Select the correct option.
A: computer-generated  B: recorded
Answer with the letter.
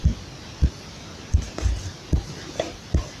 B